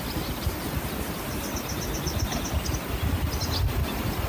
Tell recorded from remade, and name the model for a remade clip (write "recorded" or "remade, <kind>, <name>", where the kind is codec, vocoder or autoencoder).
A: recorded